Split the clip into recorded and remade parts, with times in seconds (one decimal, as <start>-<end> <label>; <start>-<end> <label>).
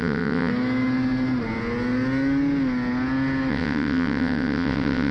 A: 0.0-0.5 remade; 0.5-3.5 recorded; 3.5-5.1 remade